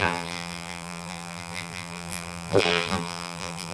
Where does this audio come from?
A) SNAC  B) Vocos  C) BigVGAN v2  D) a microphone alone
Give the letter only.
C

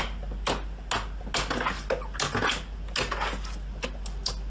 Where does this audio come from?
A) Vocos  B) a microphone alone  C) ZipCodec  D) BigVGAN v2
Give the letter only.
B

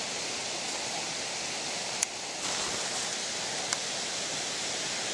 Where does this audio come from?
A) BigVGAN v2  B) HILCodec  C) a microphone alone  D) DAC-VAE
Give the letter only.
C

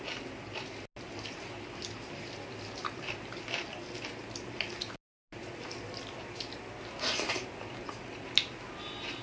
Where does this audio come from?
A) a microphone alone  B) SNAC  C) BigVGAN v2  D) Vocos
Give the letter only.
A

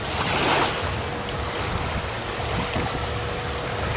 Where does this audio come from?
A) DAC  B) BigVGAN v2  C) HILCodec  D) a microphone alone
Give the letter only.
D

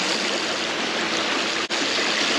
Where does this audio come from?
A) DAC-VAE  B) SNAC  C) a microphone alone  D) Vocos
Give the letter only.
C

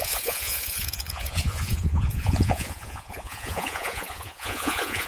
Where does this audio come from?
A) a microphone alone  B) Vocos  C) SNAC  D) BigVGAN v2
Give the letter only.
B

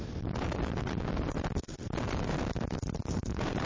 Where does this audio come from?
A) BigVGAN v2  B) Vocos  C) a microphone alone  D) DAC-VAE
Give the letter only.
A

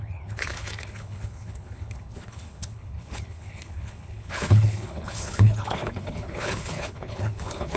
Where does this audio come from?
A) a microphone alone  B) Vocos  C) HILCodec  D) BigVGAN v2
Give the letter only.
C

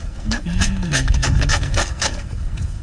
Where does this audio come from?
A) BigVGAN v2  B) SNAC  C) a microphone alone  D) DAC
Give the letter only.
B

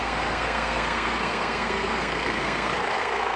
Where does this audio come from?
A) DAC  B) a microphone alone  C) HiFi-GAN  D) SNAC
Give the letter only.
D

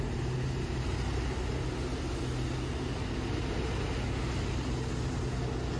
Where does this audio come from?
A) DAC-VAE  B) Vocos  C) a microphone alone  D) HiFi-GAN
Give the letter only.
C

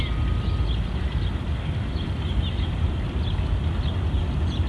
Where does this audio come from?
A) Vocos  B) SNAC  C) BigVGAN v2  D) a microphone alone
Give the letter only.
D